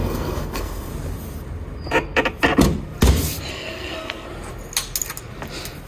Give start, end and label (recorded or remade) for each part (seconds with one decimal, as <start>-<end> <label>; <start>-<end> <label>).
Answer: 0.0-0.9 remade; 0.9-3.5 recorded; 3.5-4.3 remade; 4.3-5.9 recorded